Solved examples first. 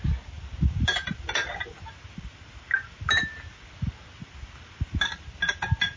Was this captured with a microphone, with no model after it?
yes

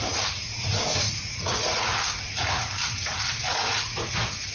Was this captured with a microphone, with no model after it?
no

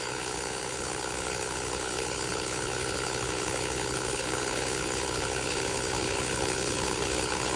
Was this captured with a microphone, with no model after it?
no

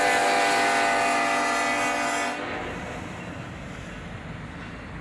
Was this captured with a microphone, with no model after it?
yes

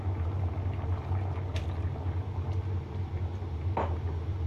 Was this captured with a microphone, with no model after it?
yes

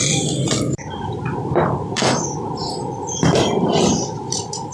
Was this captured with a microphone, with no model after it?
no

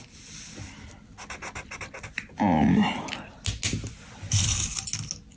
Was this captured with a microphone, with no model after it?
yes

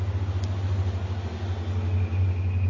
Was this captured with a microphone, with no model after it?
yes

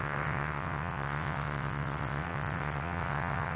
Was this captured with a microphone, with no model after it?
no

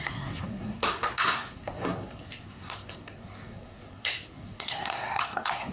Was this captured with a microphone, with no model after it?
no